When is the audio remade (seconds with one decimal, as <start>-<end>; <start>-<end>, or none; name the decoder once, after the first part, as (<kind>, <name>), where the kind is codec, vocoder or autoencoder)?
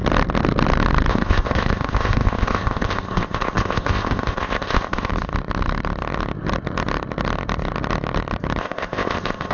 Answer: 1.1-5.1 (codec, ZipCodec); 8.6-9.5